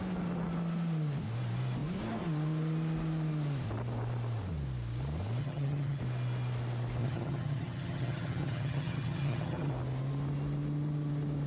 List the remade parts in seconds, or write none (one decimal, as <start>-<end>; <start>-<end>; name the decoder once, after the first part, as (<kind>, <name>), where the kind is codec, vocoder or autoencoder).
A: 5.4-6.0 (vocoder, HiFi-GAN); 7.0-9.7